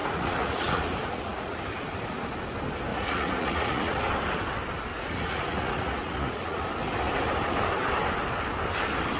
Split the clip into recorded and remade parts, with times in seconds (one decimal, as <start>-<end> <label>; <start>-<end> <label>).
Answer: 0.0-1.6 remade; 1.6-2.9 recorded; 2.9-4.0 remade; 4.0-4.9 recorded; 4.9-6.7 remade; 6.7-9.2 recorded